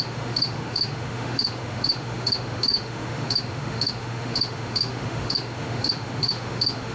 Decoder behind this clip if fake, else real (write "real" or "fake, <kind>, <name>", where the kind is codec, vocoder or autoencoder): fake, autoencoder, DAC-VAE